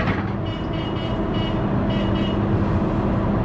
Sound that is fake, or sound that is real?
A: real